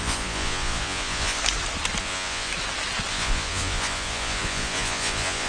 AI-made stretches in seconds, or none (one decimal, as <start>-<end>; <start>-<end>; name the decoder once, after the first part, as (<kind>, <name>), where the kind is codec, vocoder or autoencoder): 0.0-1.4 (vocoder, Vocos); 2.0-2.5; 3.1-5.5